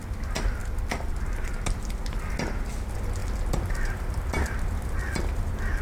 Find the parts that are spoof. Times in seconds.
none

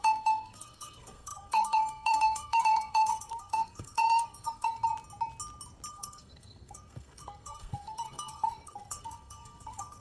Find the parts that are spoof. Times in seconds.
0.0-4.8 (codec, SNAC); 5.9-10.0

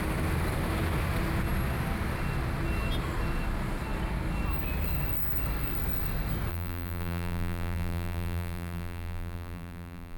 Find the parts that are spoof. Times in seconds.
6.5-10.2 (vocoder, BigVGAN v2)

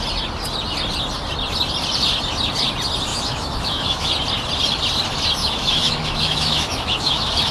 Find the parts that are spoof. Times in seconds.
3.1-4.1 (autoencoder, DAC-VAE); 5.4-7.5

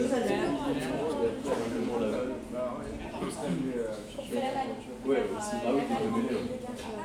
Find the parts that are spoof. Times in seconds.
3.4-4.4 (autoencoder, DAC-VAE)

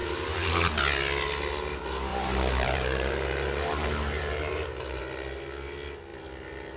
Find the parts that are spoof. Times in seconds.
2.1-5.0 (vocoder, BigVGAN v2)

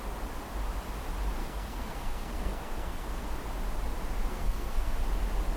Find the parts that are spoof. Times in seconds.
1.4-3.4 (codec, SNAC); 4.3-5.0